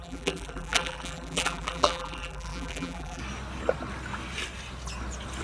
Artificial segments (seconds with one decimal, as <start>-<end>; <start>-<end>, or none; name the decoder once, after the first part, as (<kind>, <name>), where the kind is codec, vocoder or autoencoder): 0.0-3.2 (vocoder, BigVGAN v2)